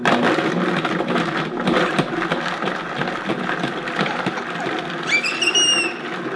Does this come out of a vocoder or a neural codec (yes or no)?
no